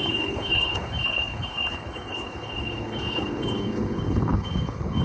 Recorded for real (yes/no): no